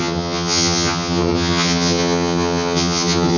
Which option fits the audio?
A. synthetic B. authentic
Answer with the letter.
A